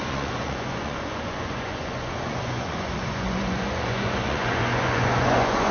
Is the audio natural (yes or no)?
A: no